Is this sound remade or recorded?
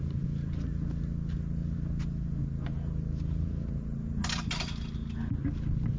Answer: recorded